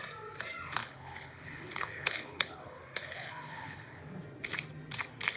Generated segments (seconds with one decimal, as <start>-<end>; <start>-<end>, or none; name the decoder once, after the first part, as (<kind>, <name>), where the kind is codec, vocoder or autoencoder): 0.8-4.0 (codec, HILCodec)